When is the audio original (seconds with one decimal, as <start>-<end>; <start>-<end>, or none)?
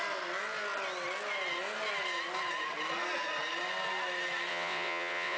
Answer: 0.0-4.5